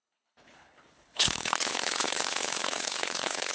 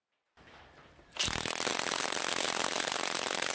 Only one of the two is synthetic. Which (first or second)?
first